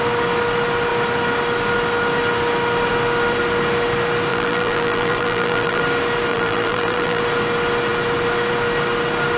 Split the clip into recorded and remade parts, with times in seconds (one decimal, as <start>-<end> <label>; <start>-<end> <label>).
0.0-4.3 recorded; 4.3-5.8 remade; 5.8-6.3 recorded; 6.3-7.2 remade; 7.2-9.4 recorded